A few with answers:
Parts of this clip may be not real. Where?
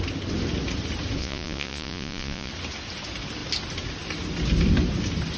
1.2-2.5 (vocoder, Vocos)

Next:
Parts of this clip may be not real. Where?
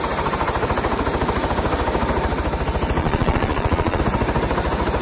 3.0-4.0 (vocoder, Vocos)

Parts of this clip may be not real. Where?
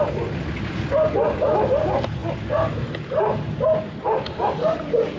none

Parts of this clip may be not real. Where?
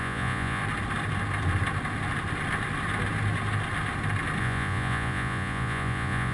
0.0-0.6 (vocoder, Vocos); 4.4-6.3